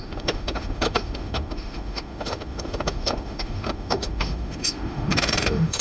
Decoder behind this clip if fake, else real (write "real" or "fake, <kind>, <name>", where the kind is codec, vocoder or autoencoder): fake, autoencoder, DAC-VAE